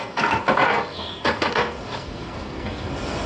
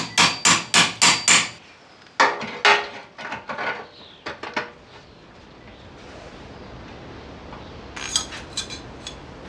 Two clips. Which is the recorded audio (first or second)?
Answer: second